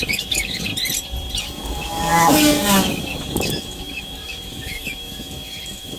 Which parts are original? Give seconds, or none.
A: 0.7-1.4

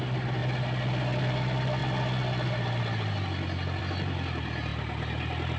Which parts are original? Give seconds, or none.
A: 0.0-5.6

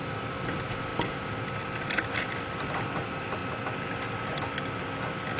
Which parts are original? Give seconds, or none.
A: 0.0-5.4

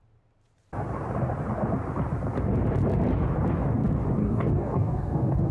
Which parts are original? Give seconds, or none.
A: 0.0-4.2

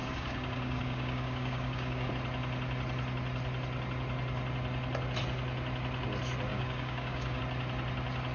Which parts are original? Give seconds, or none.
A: 2.1-6.5; 7.4-8.3

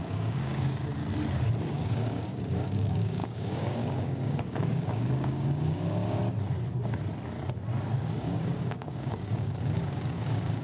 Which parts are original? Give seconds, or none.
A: 1.0-1.6; 6.2-8.2

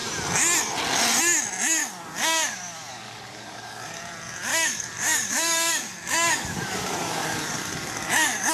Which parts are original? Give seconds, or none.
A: 0.0-1.8; 4.0-4.5

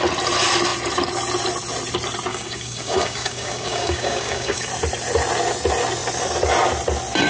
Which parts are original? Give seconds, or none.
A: 0.0-2.3; 4.7-7.3